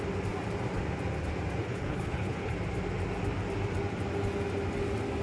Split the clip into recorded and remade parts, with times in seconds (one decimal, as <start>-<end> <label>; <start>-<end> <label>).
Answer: 0.0-1.6 recorded; 1.6-2.5 remade; 2.5-5.2 recorded